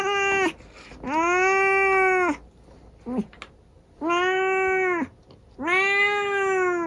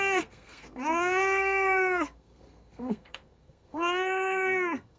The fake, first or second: second